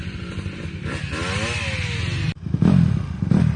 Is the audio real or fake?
real